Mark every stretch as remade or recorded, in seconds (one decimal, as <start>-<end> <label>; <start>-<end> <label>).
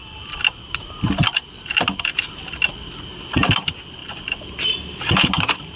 0.0-3.1 recorded; 3.1-3.6 remade; 3.6-4.0 recorded; 4.0-5.8 remade